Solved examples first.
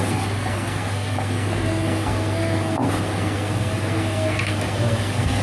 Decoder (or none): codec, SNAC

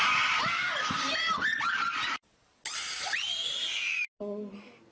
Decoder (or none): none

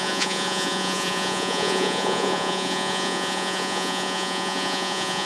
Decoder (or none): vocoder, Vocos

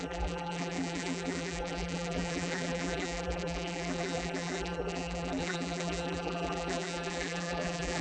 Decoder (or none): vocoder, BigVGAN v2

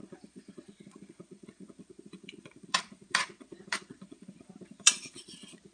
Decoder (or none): vocoder, Vocos